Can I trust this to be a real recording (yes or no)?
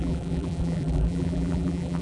no